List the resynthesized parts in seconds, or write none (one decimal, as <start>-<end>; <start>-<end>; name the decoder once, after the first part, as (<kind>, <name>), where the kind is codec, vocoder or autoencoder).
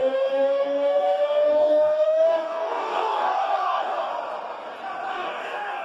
0.0-4.1 (codec, DAC); 5.1-5.8